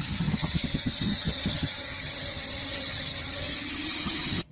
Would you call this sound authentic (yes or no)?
no